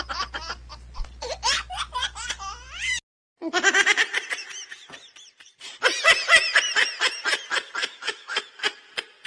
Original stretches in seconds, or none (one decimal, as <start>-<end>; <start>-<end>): 0.0-7.8; 8.4-9.3